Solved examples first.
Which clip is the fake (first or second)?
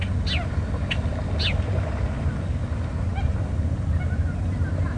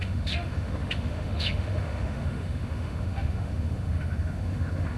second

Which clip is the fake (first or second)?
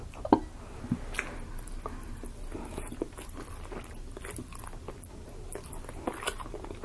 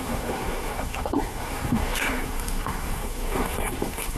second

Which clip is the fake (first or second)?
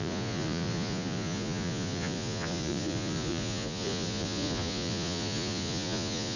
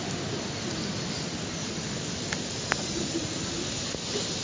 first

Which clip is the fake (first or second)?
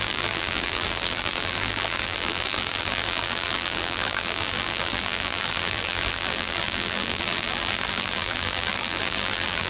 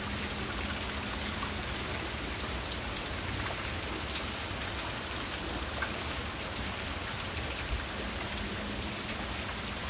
first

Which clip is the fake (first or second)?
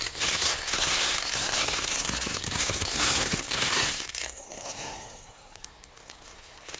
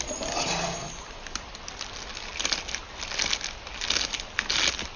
first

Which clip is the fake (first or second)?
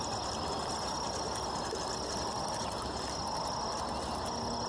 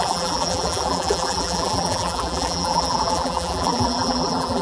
second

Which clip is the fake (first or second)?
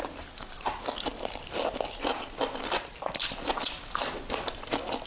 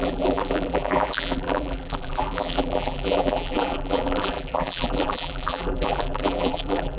second